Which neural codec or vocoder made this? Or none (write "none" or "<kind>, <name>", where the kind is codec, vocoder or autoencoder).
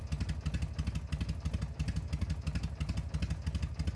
none